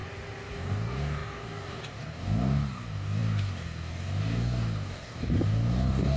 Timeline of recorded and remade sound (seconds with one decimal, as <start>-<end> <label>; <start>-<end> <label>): 0.0-0.5 recorded; 0.5-6.2 remade